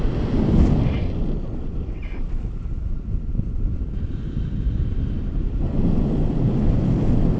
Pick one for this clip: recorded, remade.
recorded